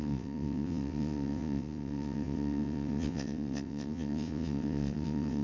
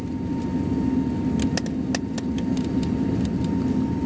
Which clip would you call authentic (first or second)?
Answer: second